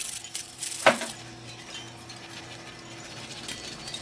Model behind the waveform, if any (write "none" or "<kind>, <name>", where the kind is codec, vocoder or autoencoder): vocoder, BigVGAN v2